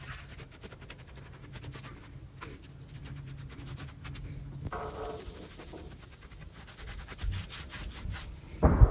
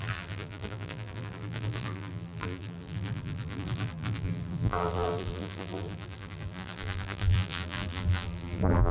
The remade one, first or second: second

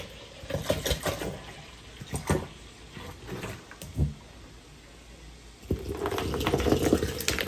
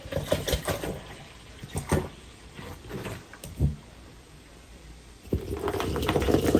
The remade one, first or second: second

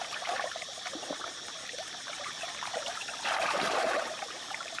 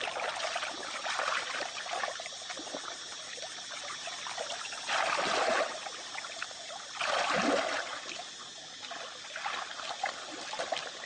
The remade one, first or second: first